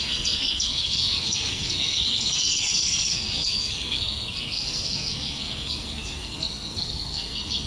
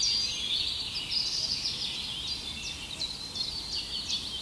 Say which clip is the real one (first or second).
second